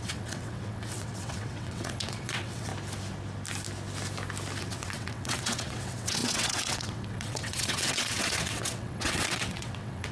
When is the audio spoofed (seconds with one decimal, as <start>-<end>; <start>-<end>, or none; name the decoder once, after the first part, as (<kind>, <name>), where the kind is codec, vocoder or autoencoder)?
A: 0.0-2.7 (vocoder, WaveNeXt); 4.6-10.1